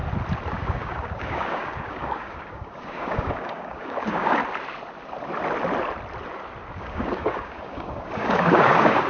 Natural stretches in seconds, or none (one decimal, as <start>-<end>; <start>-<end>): 0.0-0.5; 4.4-6.7